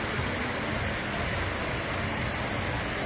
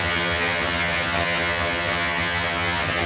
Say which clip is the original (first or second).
first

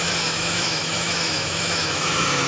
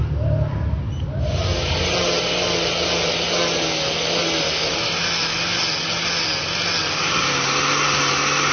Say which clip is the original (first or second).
second